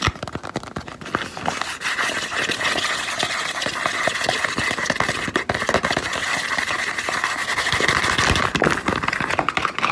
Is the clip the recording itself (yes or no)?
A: yes